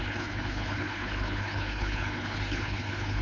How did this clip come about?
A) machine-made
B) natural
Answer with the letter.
A